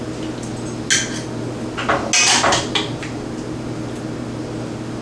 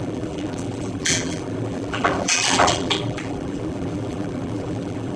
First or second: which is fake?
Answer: second